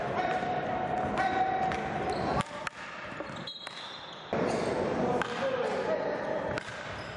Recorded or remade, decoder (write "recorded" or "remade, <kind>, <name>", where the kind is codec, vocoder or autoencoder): recorded